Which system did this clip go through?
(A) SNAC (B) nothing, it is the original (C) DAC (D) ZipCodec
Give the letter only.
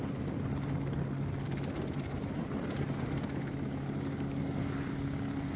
B